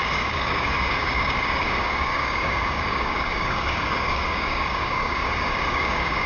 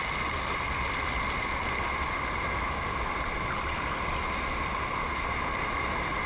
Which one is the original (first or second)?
second